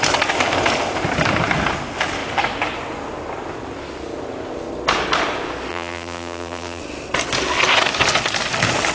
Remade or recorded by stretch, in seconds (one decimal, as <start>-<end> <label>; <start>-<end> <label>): 0.0-5.7 recorded; 5.7-6.8 remade; 6.8-8.9 recorded